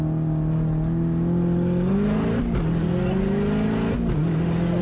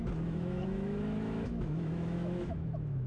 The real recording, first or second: first